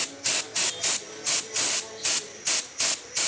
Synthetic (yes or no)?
no